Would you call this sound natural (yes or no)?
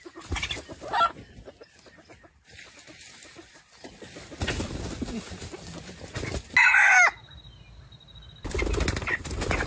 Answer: yes